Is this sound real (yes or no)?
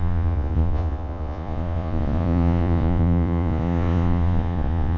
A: no